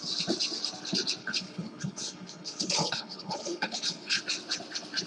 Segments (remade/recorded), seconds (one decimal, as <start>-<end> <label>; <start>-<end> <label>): 0.0-1.2 recorded; 1.2-4.2 remade; 4.2-5.1 recorded